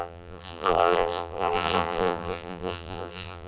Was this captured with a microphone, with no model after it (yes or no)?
no